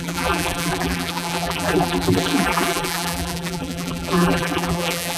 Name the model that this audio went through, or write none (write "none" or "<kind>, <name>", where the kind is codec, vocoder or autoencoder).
vocoder, BigVGAN v2